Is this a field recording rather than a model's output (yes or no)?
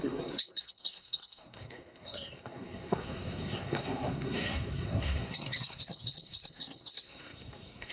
no